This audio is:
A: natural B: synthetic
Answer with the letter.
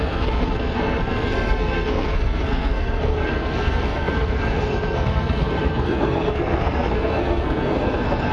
B